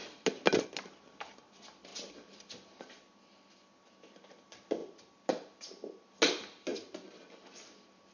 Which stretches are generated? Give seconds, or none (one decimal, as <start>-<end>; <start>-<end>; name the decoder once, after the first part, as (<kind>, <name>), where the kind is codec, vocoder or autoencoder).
none